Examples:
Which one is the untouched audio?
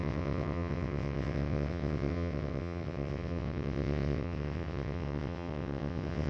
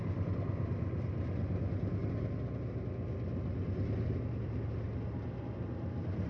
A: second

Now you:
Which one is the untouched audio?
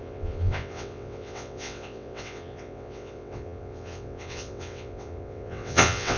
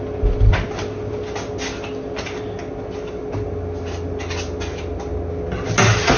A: second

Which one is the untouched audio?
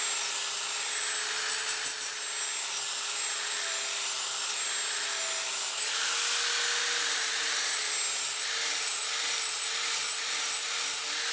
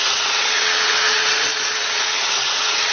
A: first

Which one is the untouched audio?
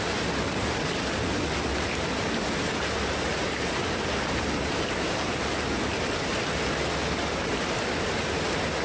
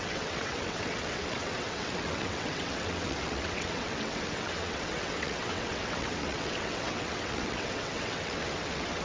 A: first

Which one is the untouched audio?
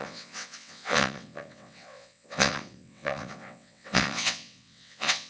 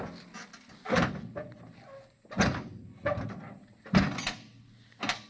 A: second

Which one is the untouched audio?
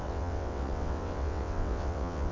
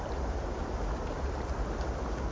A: second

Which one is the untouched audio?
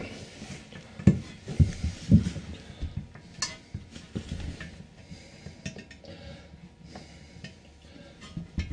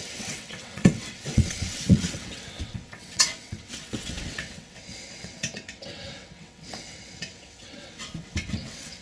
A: first